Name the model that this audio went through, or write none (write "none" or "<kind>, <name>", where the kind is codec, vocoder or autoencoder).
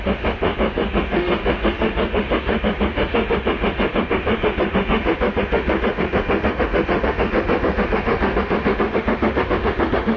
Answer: autoencoder, DAC-VAE